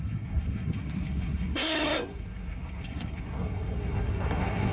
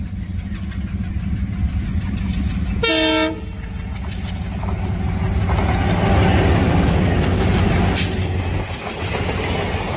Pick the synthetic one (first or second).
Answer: first